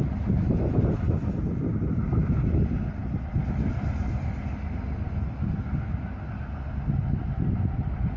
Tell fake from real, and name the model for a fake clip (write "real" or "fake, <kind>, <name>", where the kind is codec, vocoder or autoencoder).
real